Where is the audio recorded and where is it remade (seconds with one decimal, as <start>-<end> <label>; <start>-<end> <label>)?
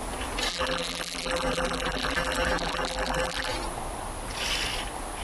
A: 0.0-0.5 recorded; 0.5-3.5 remade; 3.5-5.2 recorded